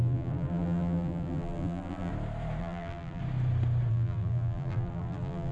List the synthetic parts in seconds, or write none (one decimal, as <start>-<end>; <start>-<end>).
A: 0.0-2.1; 2.6-3.2; 3.9-5.5